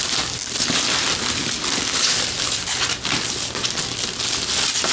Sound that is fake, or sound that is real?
real